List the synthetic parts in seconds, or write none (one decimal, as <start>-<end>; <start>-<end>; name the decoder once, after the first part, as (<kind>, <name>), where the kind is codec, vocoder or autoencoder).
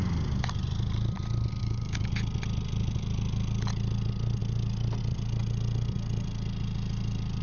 1.6-2.1 (codec, DAC)